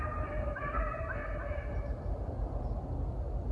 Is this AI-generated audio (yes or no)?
no